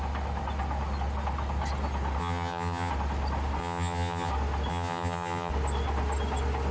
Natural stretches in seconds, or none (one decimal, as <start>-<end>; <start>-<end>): 0.0-2.2; 2.9-3.6; 4.3-4.7; 5.5-6.7

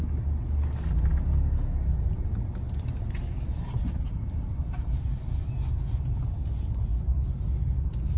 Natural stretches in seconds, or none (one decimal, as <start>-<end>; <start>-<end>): 0.0-6.9; 7.4-8.2

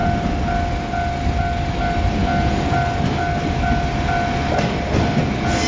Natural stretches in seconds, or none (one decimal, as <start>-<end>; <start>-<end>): 0.0-5.7

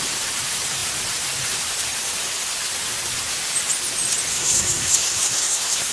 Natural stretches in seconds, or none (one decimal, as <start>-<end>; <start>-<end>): 0.0-4.3

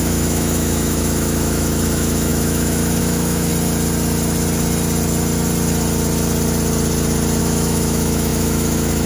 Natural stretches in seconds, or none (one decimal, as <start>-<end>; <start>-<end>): 3.5-7.4

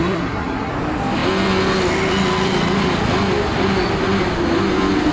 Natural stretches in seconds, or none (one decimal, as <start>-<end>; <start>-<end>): 0.7-5.1